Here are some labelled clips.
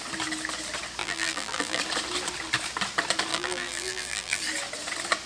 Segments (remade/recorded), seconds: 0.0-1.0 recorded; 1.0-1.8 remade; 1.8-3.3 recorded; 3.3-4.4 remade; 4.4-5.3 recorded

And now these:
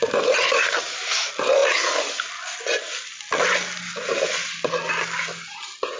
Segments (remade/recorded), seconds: 0.0-6.0 recorded

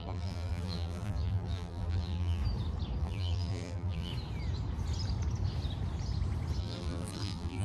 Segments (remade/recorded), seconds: 0.0-2.4 remade; 2.4-3.0 recorded; 3.0-4.1 remade; 4.1-6.6 recorded; 6.6-7.6 remade

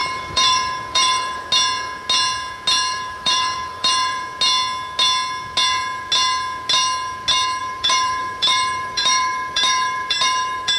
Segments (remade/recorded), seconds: 0.0-1.4 remade; 1.4-2.9 recorded; 2.9-4.2 remade; 4.2-7.6 recorded; 7.6-10.8 remade

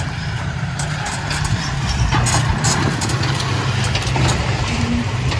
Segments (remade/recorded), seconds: 0.0-1.1 remade; 1.1-4.3 recorded; 4.3-5.4 remade